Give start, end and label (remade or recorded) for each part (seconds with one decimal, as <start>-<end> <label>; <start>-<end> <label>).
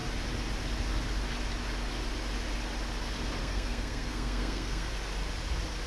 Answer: 0.0-3.4 recorded; 3.4-4.9 remade; 4.9-5.9 recorded